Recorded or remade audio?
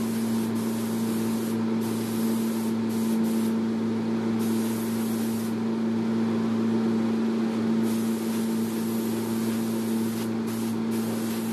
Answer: recorded